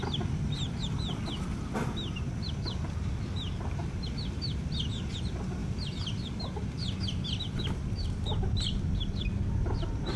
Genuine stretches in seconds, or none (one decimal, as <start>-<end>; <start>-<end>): 0.0-5.6; 9.5-10.2

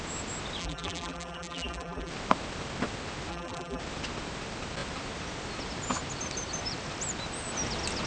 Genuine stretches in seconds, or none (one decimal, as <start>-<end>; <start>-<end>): 0.0-0.6; 2.1-3.3; 3.8-8.1

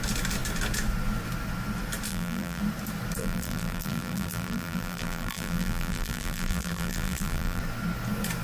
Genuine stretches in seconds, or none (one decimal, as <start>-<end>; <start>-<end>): 0.0-2.1; 2.6-3.2; 7.6-8.4

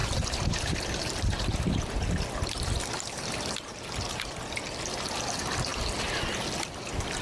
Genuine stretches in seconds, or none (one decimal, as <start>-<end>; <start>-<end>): 3.8-7.2

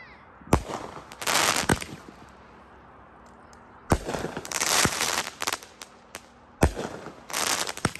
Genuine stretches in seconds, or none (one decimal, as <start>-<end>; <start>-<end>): 0.0-1.7; 5.5-8.0

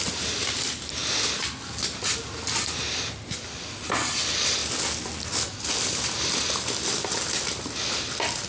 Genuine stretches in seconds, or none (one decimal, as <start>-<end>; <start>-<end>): 0.0-8.5

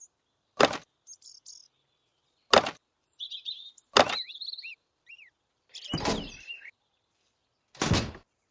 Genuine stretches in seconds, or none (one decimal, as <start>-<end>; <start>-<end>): 1.6-4.7